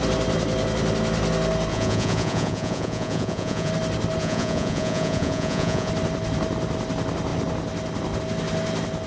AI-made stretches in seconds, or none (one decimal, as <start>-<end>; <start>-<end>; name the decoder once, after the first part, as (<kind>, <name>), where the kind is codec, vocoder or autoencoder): 1.7-3.7 (vocoder, Vocos); 4.2-5.9